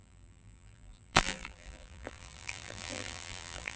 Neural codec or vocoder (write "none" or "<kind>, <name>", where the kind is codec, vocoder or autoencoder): vocoder, BigVGAN v2